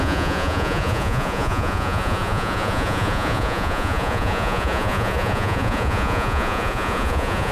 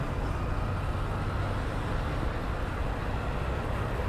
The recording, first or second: second